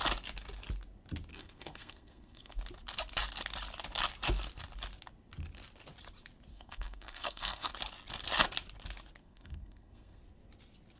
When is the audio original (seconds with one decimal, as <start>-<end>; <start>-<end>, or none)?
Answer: 0.0-1.3; 2.6-6.5; 7.7-9.2; 10.2-11.0